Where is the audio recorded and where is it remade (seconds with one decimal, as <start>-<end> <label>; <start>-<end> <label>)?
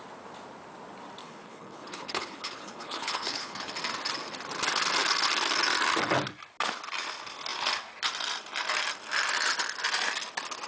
0.0-1.2 recorded; 1.2-3.7 remade; 3.7-10.7 recorded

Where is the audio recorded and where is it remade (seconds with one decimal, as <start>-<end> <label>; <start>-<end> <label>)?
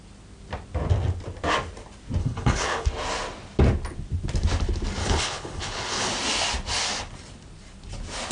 0.0-2.2 recorded; 2.2-2.9 remade; 2.9-5.0 recorded; 5.0-6.1 remade; 6.1-8.3 recorded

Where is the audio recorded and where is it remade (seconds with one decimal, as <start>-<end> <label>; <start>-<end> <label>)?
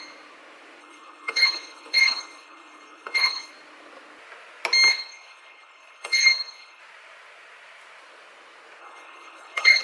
0.0-0.8 recorded; 0.8-3.5 remade; 3.5-4.9 recorded; 4.9-6.8 remade; 6.8-8.8 recorded; 8.8-9.8 remade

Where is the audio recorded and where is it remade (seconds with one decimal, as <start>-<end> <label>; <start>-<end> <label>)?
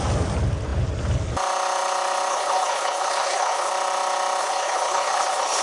0.0-2.3 recorded; 2.3-3.7 remade; 3.7-4.4 recorded; 4.4-5.6 remade